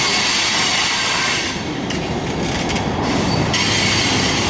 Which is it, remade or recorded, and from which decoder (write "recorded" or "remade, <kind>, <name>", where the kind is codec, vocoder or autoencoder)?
recorded